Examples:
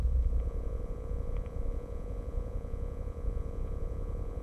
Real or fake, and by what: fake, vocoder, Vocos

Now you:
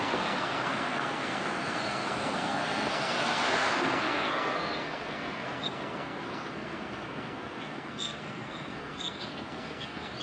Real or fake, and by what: fake, codec, SNAC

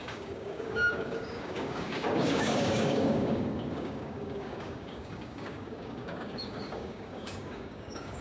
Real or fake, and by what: fake, codec, DAC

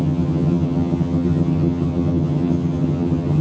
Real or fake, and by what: fake, vocoder, HiFi-GAN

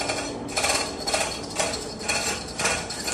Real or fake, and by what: real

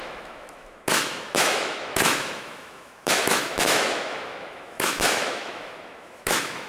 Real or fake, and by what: fake, autoencoder, DAC-VAE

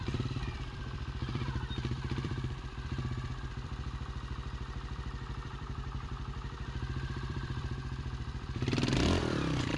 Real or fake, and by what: fake, vocoder, BigVGAN v2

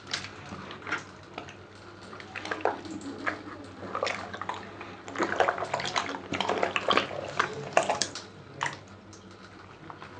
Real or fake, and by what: real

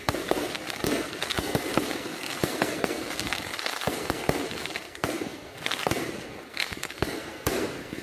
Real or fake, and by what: fake, codec, SNAC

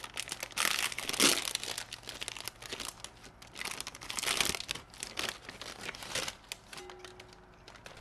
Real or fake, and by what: real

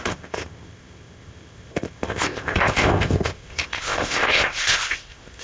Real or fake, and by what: fake, codec, ZipCodec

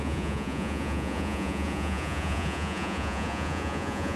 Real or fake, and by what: fake, vocoder, Vocos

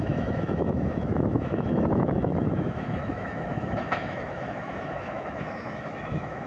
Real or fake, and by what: fake, autoencoder, DAC-VAE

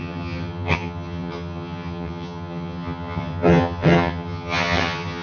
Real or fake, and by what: fake, vocoder, HiFi-GAN